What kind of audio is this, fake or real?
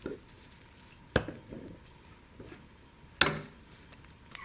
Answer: real